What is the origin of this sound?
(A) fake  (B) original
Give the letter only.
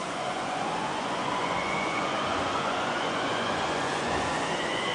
A